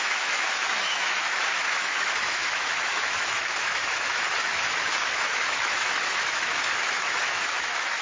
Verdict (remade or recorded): remade